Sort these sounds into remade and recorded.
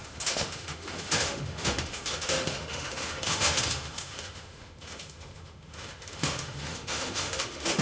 remade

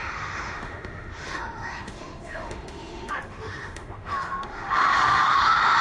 remade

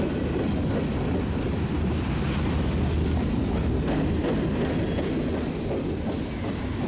recorded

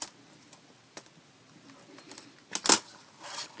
recorded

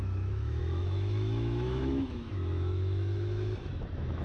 remade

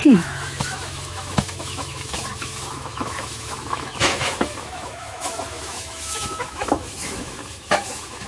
remade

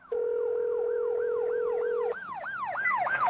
remade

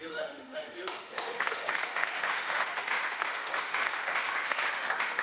remade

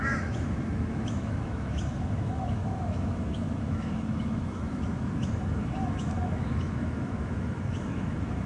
remade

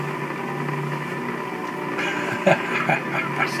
recorded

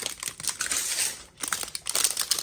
recorded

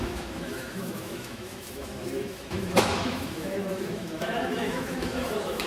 remade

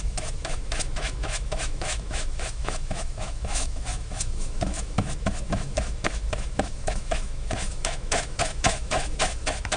remade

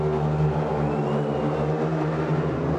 recorded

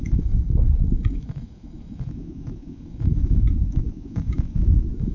remade